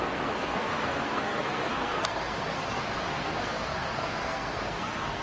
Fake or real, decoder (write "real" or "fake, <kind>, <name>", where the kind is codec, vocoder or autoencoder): fake, codec, SNAC